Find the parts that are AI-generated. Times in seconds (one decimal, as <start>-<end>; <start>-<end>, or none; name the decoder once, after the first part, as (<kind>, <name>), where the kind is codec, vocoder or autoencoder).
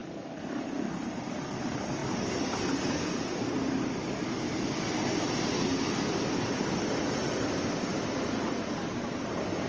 none